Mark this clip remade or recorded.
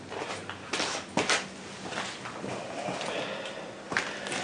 recorded